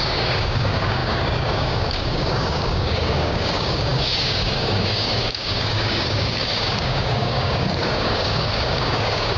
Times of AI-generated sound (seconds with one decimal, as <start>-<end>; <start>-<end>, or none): 0.0-9.4